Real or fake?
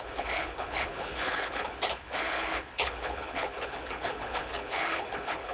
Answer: fake